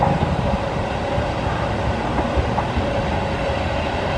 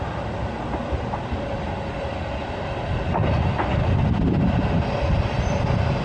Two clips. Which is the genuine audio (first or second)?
second